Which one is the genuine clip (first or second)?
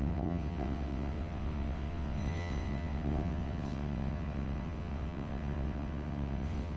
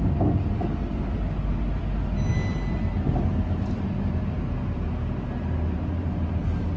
second